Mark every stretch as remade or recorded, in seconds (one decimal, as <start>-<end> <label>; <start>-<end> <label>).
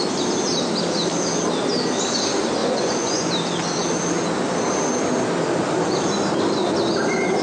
0.0-2.6 recorded; 2.6-3.3 remade; 3.3-7.4 recorded